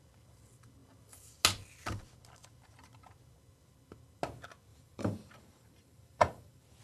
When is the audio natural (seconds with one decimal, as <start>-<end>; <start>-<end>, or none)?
0.0-4.7